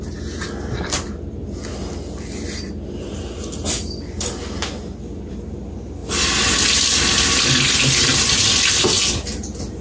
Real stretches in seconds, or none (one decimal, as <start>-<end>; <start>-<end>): 0.0-9.8